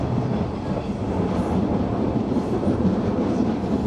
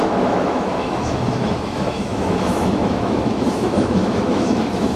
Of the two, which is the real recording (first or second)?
first